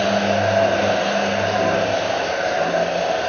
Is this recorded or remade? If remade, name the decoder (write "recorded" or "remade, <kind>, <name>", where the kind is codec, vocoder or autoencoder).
recorded